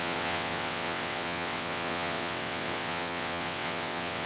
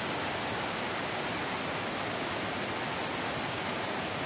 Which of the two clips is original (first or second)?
second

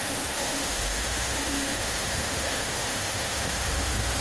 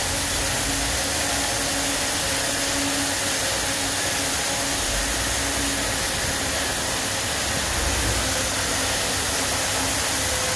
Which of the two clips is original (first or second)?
second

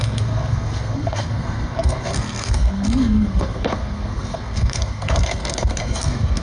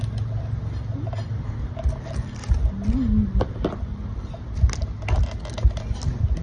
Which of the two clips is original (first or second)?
second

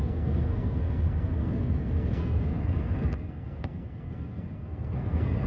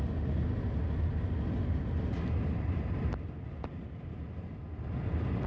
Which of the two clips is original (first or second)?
second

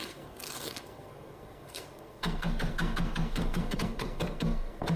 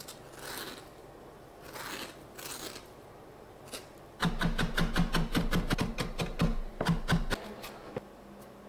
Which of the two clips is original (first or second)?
second